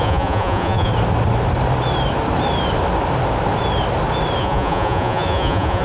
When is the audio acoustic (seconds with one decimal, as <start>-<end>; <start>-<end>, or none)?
0.9-4.4